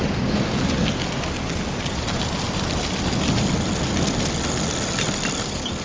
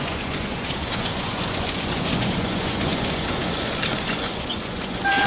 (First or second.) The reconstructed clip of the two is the second